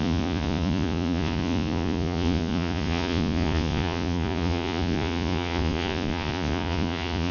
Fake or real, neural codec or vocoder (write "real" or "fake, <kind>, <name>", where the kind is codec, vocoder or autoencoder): fake, vocoder, Vocos